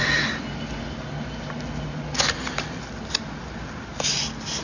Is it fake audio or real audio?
real